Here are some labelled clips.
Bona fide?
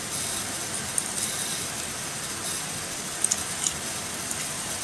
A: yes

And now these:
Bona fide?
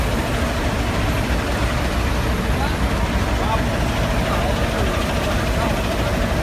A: yes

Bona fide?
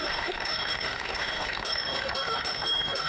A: no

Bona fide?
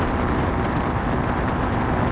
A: no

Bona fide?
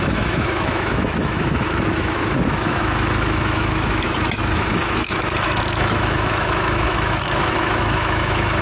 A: no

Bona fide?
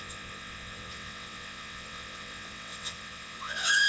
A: no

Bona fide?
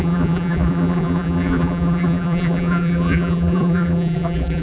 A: no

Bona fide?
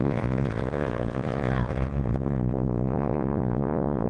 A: no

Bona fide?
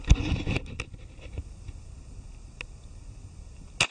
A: yes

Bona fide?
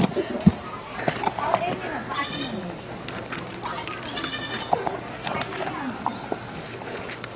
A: yes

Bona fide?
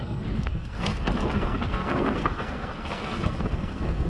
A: no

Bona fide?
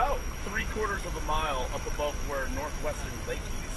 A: no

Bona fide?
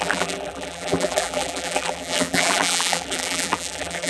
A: no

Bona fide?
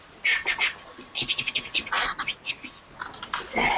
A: yes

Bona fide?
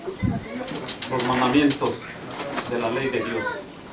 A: yes